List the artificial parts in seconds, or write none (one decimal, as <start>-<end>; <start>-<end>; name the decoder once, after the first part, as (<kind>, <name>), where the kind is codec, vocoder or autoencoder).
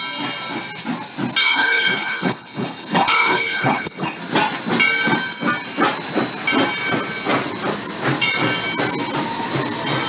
1.4-4.2 (codec, HILCodec)